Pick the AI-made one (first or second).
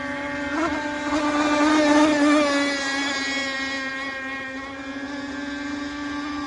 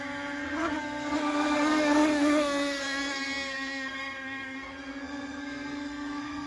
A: second